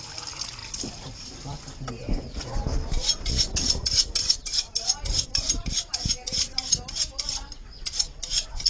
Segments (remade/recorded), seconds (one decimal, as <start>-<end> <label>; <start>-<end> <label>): 0.0-0.6 recorded; 0.6-1.9 remade; 1.9-3.8 recorded; 3.8-6.6 remade; 6.6-8.7 recorded